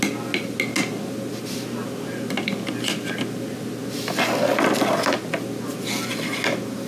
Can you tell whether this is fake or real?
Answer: real